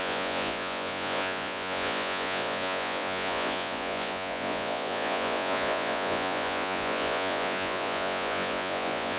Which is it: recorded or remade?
remade